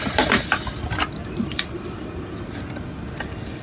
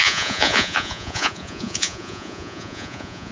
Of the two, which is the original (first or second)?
first